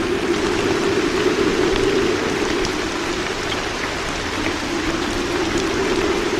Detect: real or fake fake